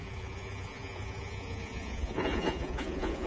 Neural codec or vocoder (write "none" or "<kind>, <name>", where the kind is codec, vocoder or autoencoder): vocoder, Vocos